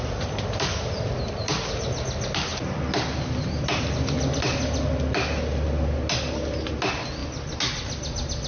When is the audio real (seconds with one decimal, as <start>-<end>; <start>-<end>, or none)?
0.0-8.5